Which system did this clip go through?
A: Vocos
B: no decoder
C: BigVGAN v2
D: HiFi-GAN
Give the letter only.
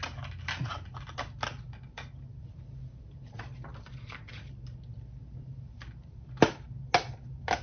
B